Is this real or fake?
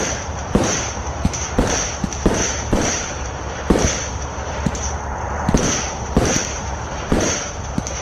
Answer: fake